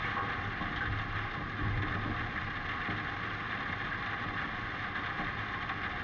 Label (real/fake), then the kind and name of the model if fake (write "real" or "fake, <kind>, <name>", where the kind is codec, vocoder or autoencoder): real